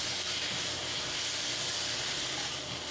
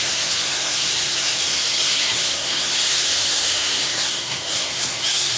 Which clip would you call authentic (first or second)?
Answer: first